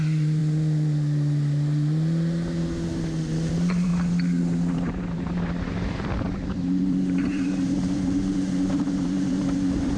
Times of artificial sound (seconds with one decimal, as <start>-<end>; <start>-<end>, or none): 0.0-0.4; 3.5-3.9; 4.4-10.0